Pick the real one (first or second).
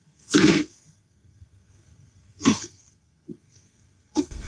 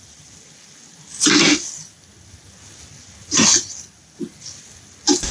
second